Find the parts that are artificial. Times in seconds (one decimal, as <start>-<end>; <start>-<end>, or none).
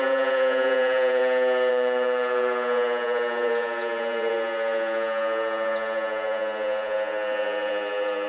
0.0-1.2; 1.7-8.3